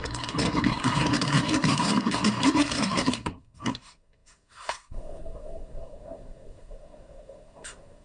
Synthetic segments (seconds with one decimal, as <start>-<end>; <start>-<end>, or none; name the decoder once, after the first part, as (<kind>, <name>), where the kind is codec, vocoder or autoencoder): 0.0-8.0 (codec, SNAC)